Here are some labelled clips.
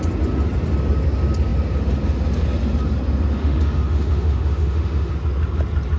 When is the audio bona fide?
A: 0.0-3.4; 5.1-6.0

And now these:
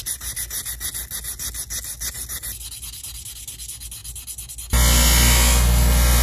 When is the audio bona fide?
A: 0.0-6.2

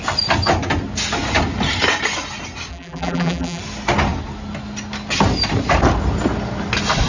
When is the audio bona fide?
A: 0.0-2.7; 3.6-7.1

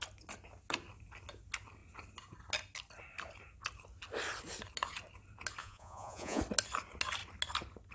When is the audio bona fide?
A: 0.0-5.6; 6.4-7.9

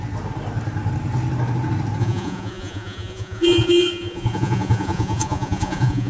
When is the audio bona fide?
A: 0.0-2.0

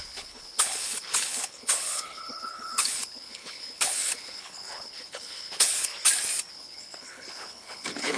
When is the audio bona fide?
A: 5.9-6.5

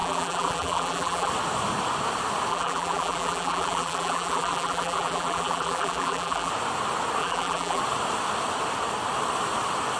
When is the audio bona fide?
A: 1.3-2.5; 6.5-7.2; 7.8-10.0

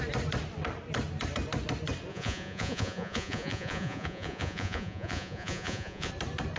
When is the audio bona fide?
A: 0.0-2.1; 6.1-6.6